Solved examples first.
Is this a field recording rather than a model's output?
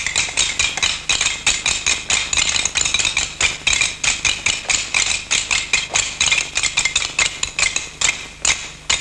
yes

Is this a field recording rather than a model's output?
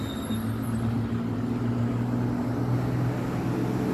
yes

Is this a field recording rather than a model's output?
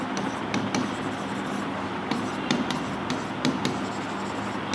yes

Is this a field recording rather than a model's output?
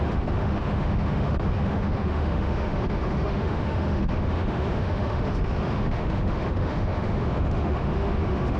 no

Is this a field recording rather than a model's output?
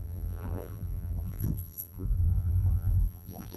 no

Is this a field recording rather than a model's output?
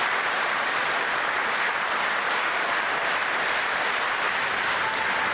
yes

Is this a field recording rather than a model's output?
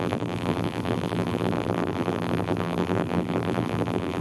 no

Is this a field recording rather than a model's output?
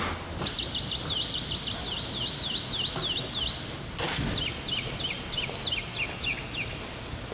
yes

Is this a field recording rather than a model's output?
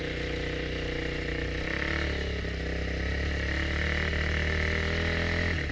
yes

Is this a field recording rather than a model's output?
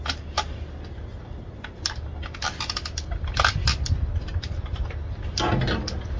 yes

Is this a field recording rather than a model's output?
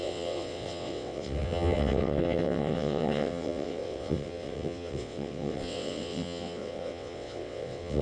no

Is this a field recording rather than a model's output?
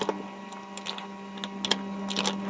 yes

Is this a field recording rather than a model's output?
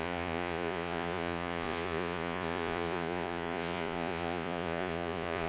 no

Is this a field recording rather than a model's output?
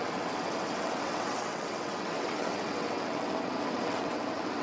no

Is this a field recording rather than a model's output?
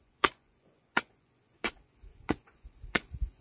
no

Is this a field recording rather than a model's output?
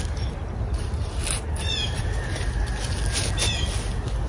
yes